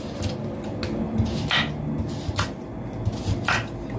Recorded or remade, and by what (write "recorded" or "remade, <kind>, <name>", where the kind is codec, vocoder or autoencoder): recorded